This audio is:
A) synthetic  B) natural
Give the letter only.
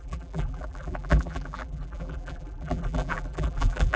A